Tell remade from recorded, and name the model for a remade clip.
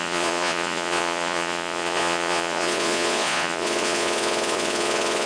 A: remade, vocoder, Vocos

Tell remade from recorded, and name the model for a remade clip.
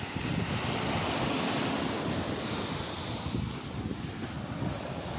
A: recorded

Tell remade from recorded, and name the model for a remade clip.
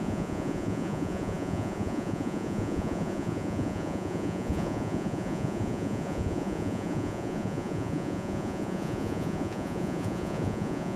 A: remade, vocoder, Vocos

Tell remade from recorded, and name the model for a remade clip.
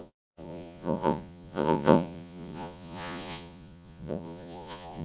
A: remade, vocoder, Vocos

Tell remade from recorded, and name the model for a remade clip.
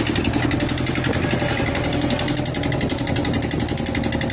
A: recorded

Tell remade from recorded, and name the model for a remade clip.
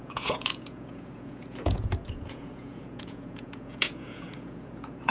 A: remade, vocoder, Vocos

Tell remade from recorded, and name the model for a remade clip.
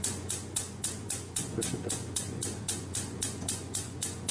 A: remade, vocoder, Vocos